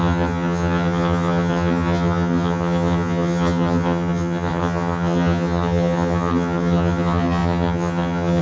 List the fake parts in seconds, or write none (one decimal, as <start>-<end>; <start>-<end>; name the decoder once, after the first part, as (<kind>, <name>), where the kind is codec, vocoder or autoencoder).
0.0-8.4 (vocoder, HiFi-GAN)